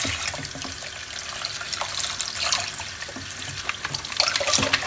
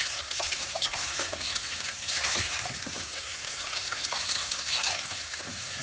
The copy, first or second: second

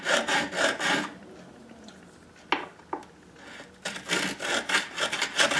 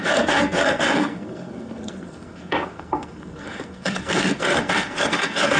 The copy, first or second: second